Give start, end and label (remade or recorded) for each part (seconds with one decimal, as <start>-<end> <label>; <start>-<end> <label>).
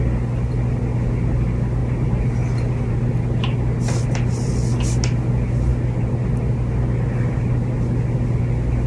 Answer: 0.0-8.9 recorded